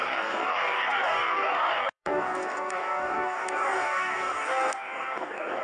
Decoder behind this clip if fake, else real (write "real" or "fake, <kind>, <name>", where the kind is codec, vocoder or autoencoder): fake, codec, DAC